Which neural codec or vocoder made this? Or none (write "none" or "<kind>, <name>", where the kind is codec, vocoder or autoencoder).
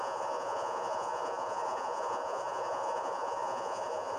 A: vocoder, Vocos